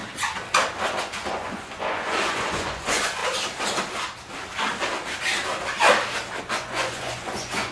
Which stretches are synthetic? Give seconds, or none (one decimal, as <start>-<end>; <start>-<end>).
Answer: 1.0-3.2; 6.4-7.7